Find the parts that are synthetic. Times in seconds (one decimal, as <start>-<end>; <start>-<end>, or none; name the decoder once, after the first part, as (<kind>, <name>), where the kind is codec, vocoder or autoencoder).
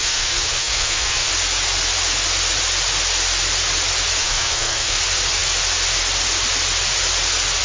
0.0-1.3 (codec, SNAC); 4.2-5.0